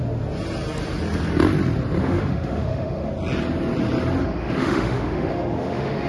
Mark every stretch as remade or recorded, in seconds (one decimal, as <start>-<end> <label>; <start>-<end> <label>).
0.0-2.0 recorded; 2.0-3.1 remade; 3.1-4.2 recorded; 4.2-6.1 remade